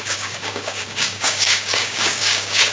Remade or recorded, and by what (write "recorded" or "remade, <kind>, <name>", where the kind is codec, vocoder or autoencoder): remade, codec, DAC